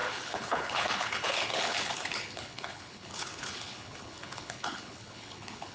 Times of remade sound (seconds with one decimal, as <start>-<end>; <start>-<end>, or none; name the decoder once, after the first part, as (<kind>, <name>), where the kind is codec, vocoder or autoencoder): 0.0-5.7 (codec, HILCodec)